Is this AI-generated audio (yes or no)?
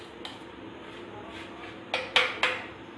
no